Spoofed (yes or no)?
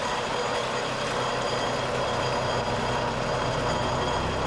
no